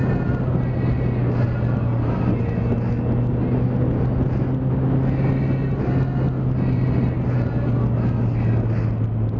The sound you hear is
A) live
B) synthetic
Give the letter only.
A